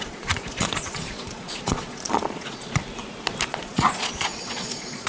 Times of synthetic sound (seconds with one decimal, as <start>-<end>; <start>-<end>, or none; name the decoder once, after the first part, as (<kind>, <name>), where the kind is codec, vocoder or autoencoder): 0.0-2.8 (vocoder, Vocos); 3.5-5.1